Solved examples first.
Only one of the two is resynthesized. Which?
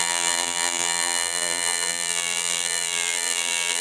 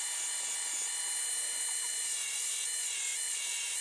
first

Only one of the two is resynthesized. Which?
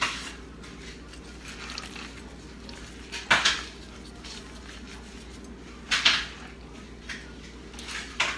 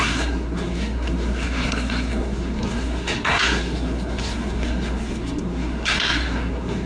second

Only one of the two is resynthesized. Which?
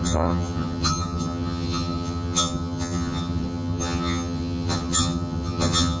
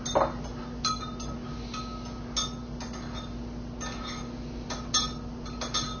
first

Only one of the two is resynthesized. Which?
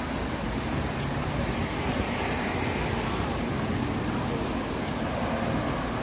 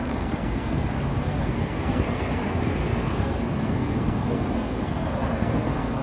second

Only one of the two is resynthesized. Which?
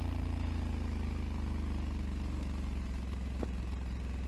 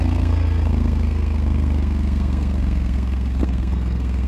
second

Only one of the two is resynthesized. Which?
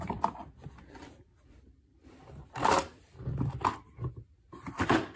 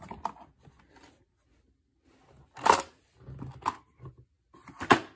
first